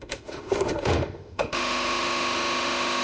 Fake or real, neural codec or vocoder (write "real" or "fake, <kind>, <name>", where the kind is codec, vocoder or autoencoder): fake, autoencoder, DAC-VAE